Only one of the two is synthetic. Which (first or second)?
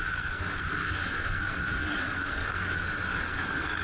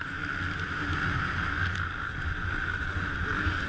first